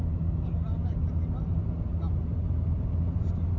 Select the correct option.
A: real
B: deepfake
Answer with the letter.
A